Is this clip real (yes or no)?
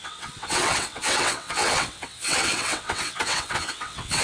no